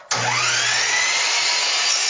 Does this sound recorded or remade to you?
recorded